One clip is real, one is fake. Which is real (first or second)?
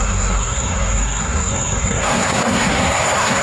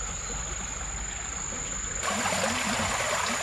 second